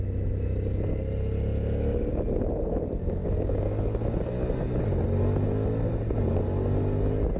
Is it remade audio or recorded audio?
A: recorded